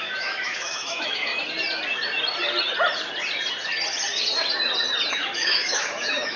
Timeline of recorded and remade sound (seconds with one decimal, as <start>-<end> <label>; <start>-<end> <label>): 0.0-1.3 remade; 1.3-5.1 recorded; 5.1-6.4 remade

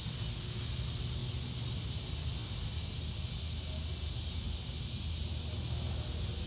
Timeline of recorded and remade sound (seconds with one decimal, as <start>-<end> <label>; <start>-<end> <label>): 0.0-6.5 recorded

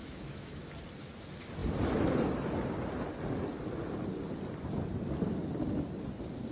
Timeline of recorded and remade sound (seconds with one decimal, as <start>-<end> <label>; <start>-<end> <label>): 0.0-0.7 remade; 0.7-6.5 recorded